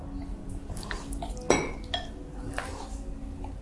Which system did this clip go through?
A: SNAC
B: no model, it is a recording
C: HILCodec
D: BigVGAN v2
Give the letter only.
B